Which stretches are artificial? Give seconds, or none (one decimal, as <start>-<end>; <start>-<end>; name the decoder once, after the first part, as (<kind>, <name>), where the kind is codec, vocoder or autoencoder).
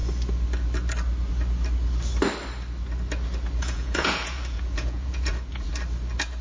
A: 3.6-5.7 (vocoder, Vocos)